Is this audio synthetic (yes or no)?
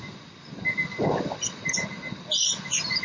yes